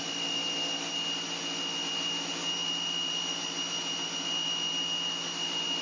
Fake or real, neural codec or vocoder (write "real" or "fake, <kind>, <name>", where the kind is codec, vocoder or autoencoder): real